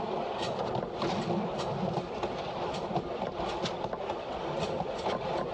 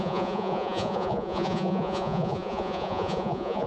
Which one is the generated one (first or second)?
second